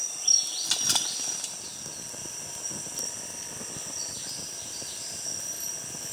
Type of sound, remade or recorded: recorded